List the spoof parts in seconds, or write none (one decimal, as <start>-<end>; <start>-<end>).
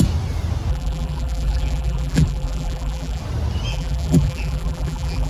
0.7-3.2; 3.7-5.3